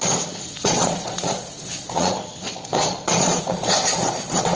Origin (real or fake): fake